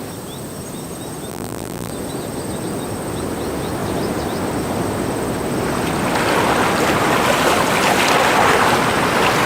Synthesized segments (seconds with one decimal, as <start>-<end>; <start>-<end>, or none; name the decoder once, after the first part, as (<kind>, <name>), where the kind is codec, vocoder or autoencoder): 1.3-1.9 (vocoder, BigVGAN v2)